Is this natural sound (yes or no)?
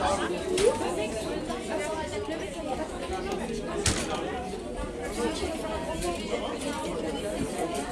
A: yes